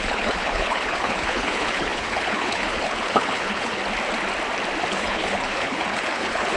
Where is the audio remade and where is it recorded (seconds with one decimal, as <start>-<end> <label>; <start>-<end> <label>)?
0.0-3.8 remade; 3.8-4.9 recorded; 4.9-6.6 remade